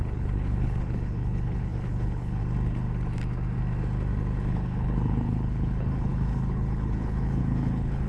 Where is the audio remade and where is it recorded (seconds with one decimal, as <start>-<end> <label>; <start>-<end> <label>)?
0.0-2.4 remade; 2.4-4.4 recorded; 4.4-8.1 remade

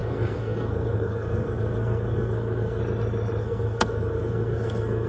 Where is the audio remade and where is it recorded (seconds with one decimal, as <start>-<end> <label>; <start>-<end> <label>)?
0.0-2.8 remade; 2.8-3.4 recorded; 3.4-5.1 remade

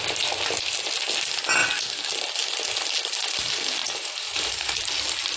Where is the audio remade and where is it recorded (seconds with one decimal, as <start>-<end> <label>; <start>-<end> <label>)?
0.0-3.8 recorded; 3.8-4.8 remade; 4.8-5.4 recorded

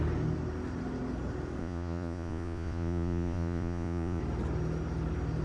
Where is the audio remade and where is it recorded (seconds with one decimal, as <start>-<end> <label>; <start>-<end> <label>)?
0.0-1.6 recorded; 1.6-4.2 remade; 4.2-5.4 recorded

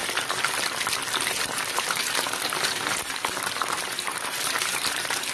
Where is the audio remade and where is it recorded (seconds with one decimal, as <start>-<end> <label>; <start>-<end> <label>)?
0.0-1.1 recorded; 1.1-5.3 remade

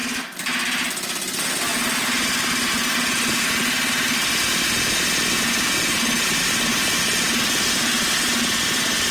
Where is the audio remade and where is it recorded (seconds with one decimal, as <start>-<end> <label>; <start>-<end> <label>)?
0.0-9.1 recorded